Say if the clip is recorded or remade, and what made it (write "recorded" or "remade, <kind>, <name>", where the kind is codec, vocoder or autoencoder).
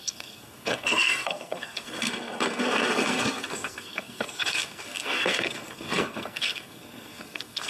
remade, codec, SNAC